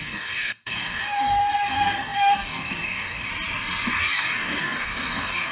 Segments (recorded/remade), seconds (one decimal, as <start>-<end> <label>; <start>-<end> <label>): 0.0-3.3 remade; 3.3-4.0 recorded; 4.0-5.5 remade